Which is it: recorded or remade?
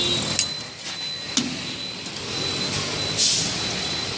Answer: recorded